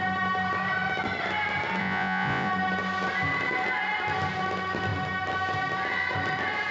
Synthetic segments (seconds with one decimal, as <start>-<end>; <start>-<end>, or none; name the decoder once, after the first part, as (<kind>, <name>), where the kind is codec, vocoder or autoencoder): 1.8-2.5 (vocoder, Vocos)